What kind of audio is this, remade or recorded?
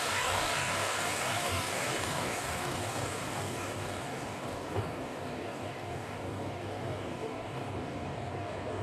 remade